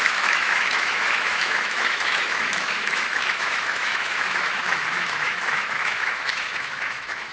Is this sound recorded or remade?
remade